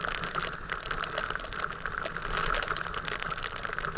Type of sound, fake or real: real